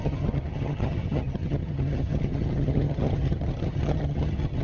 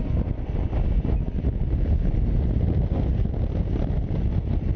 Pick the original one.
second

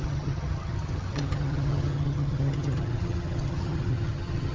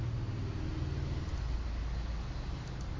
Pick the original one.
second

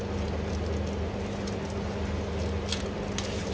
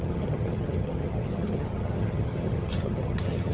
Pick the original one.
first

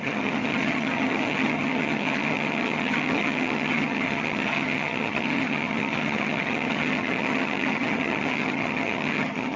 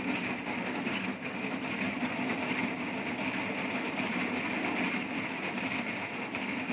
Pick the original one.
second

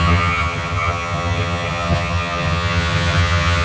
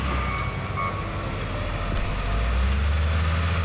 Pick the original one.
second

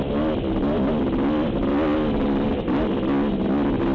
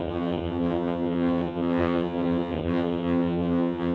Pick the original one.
first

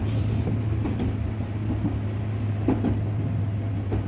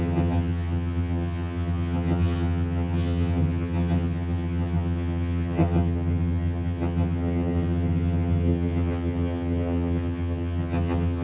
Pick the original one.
first